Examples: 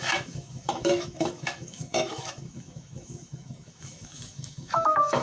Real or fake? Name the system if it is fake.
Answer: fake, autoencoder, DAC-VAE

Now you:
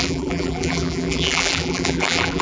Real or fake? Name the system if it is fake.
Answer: fake, vocoder, BigVGAN v2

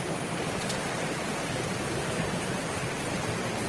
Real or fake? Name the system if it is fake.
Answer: fake, vocoder, BigVGAN v2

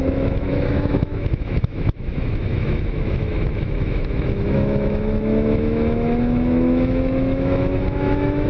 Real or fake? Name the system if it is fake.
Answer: fake, autoencoder, DAC-VAE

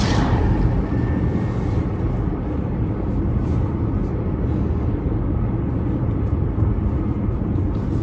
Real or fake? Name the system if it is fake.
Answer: real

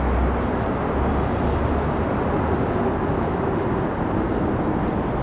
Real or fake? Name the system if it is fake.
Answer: real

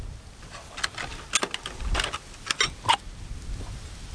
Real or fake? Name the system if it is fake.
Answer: real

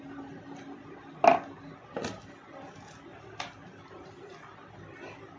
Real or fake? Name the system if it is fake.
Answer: real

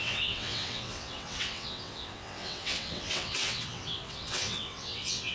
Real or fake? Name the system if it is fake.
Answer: fake, vocoder, WaveNeXt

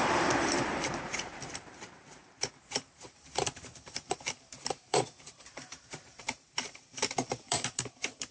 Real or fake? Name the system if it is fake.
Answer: fake, vocoder, BigVGAN v2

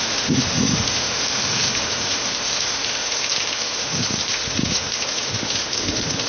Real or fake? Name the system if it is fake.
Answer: fake, autoencoder, DAC-VAE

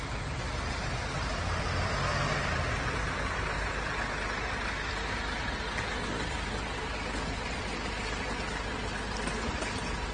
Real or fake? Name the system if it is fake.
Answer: real